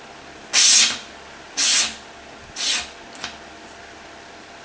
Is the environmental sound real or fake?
real